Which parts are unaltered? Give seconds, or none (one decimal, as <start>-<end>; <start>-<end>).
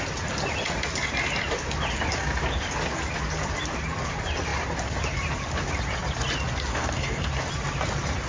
0.0-6.7; 7.3-8.3